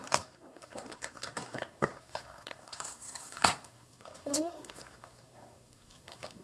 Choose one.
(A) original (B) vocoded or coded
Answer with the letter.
B